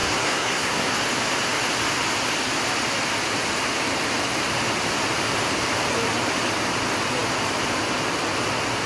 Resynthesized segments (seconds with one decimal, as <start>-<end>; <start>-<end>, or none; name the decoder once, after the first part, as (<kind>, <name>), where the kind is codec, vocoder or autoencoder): 0.0-0.9 (codec, SNAC)